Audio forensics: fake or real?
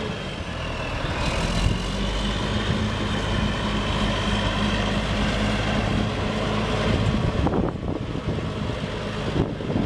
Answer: real